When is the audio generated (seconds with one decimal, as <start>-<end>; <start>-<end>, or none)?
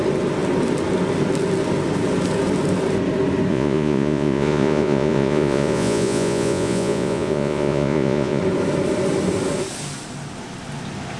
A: 3.5-8.4